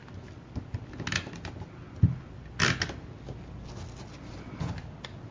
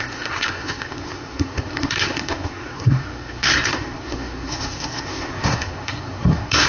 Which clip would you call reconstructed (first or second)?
second